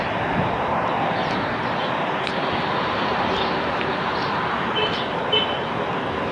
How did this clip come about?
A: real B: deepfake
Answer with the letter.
A